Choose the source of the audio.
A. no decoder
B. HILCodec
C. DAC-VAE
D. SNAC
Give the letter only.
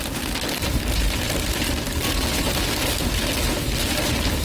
A